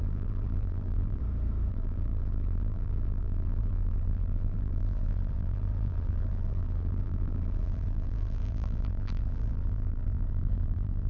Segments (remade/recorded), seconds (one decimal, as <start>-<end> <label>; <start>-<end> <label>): 0.0-1.2 remade; 1.2-1.7 recorded; 1.7-11.1 remade